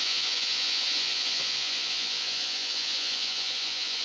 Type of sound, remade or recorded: remade